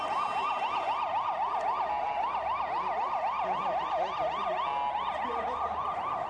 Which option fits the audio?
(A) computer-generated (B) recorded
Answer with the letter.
B